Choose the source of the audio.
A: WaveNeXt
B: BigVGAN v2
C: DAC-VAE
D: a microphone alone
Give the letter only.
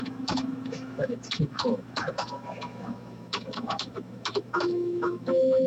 C